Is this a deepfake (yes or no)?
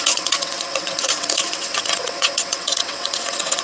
yes